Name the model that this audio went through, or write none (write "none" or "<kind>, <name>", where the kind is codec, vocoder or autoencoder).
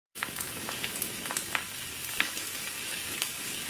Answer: codec, DAC